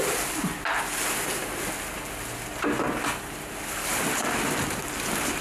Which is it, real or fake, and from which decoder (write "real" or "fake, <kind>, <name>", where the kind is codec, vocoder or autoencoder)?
real